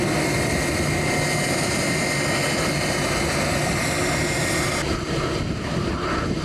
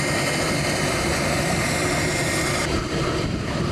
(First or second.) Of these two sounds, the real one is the first